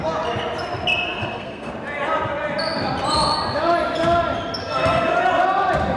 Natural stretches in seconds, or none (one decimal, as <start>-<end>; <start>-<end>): 0.0-1.2; 1.7-4.6; 5.2-6.0